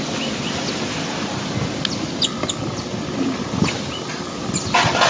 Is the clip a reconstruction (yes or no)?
no